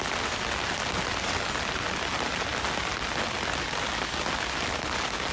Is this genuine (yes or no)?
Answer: yes